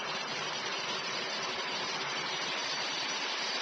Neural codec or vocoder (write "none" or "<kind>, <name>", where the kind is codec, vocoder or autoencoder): vocoder, BigVGAN v2